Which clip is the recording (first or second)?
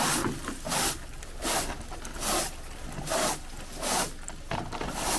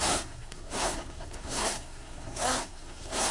first